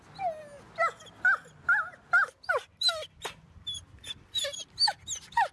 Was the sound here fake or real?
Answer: real